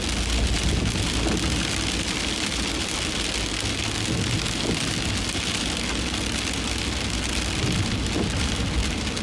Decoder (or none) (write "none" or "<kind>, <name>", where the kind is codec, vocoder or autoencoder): none